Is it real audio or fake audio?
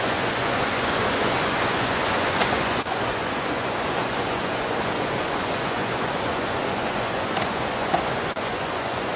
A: fake